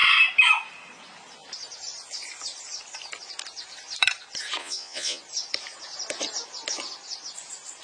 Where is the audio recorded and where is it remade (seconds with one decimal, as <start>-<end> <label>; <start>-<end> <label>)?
0.0-4.6 recorded; 4.6-5.2 remade; 5.2-7.8 recorded